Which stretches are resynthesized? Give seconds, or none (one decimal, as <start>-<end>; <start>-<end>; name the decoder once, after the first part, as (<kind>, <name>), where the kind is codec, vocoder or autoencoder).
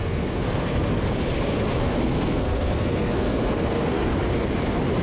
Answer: 0.0-0.9 (codec, SNAC); 1.8-4.1